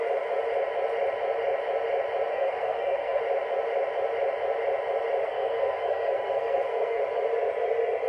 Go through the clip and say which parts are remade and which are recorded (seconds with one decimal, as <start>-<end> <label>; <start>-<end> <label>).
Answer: 0.0-2.3 recorded; 2.3-3.2 remade; 3.2-5.2 recorded; 5.2-7.0 remade; 7.0-8.1 recorded